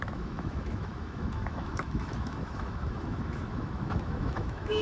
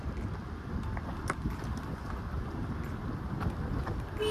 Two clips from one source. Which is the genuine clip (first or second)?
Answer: second